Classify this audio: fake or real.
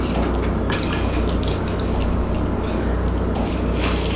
real